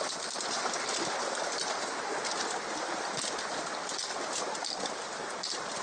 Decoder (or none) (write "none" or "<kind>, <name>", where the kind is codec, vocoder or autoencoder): none